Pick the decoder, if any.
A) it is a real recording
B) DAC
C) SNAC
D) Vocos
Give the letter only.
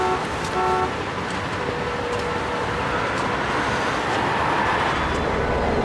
A